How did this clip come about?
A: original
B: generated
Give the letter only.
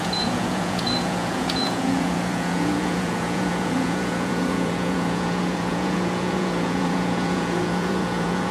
B